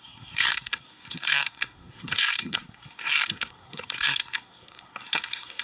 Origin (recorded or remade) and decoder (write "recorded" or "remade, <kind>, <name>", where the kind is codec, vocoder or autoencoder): remade, codec, SNAC